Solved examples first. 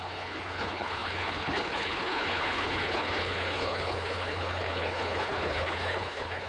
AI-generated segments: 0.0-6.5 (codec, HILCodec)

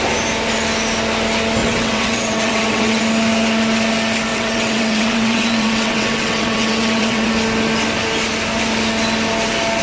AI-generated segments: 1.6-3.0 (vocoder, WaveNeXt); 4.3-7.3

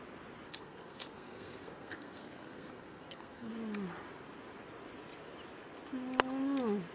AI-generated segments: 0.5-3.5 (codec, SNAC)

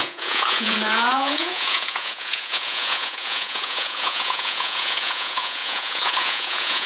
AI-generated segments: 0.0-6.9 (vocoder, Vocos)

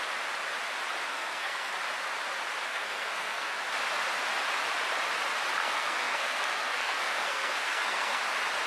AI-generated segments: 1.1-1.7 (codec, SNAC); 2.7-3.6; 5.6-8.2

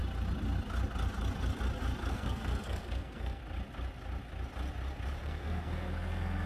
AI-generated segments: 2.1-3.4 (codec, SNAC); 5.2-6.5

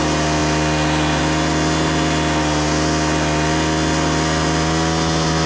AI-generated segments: none